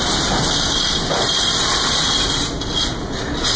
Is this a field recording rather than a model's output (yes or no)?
yes